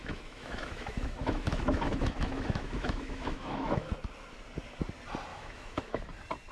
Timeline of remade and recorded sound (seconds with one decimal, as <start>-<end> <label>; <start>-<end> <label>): 0.0-3.9 remade; 3.9-5.3 recorded; 5.3-6.1 remade; 6.1-6.5 recorded